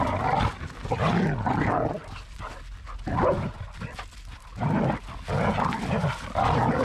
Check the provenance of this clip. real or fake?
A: real